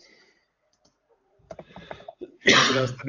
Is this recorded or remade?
remade